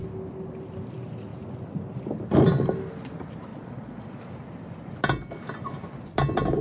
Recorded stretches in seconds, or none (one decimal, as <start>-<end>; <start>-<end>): 0.0-3.5; 4.3-6.6